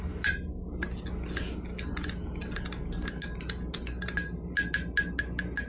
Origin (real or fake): real